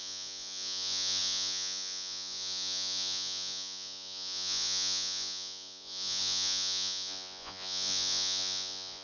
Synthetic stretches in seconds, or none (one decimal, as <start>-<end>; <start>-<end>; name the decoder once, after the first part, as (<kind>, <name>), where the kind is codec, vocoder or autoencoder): 0.0-9.0 (vocoder, Vocos)

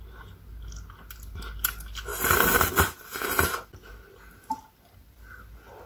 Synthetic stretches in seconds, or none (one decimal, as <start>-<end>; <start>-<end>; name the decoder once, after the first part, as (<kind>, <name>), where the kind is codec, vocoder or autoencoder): none